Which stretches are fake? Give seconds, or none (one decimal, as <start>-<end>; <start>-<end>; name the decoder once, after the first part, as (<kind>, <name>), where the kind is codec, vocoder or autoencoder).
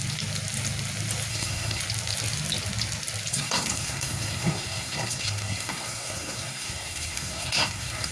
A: 1.3-1.8 (codec, SNAC); 3.3-8.1